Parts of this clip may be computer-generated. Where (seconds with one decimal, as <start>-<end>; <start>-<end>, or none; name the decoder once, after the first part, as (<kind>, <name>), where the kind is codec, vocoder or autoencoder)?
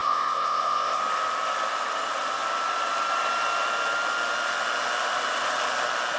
0.0-1.0 (codec, ZipCodec)